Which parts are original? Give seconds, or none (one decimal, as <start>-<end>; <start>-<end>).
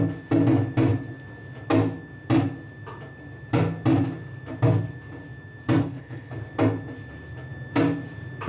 0.0-5.8; 6.3-8.5